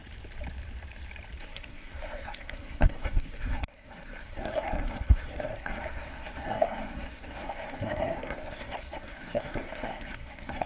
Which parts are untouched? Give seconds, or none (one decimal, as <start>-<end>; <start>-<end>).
0.0-1.4